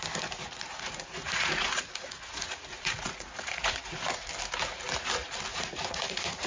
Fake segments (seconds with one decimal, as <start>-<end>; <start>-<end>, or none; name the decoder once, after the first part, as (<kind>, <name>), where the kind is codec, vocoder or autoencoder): 0.4-4.3 (vocoder, Vocos); 5.5-6.5